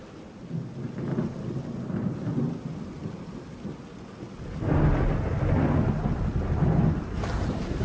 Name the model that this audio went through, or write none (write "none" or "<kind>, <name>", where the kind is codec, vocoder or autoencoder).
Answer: none